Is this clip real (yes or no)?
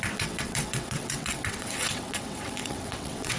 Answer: no